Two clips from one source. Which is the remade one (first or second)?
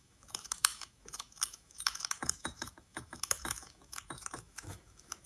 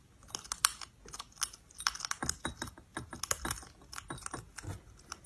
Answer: first